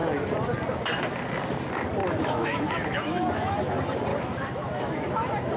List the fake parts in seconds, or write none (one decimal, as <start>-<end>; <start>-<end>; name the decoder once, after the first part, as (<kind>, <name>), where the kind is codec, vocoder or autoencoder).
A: 2.0-3.6 (autoencoder, DAC-VAE); 4.1-5.1